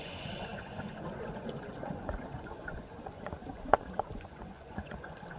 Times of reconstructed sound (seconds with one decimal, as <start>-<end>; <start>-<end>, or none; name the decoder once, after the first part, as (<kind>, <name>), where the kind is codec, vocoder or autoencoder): 0.0-5.4 (vocoder, Vocos)

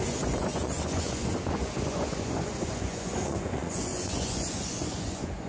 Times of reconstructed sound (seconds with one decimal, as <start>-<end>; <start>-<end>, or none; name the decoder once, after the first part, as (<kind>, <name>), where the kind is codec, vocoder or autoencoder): 0.0-5.5 (vocoder, Vocos)

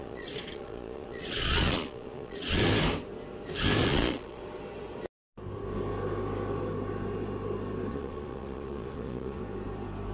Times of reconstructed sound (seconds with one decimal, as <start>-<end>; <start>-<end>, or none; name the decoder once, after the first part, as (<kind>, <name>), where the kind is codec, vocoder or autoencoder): 0.0-2.7 (vocoder, Vocos); 3.8-4.4; 7.9-9.4